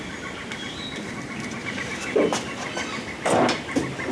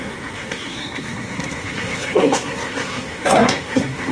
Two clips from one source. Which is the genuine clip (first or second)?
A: first